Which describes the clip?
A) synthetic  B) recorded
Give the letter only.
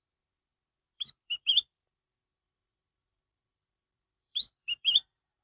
A